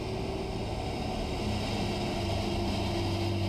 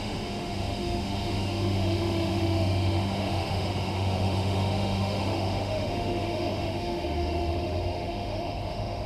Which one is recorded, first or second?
first